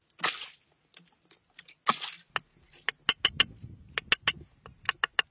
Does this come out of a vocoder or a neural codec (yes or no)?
no